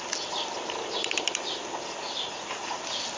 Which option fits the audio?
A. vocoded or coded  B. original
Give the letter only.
B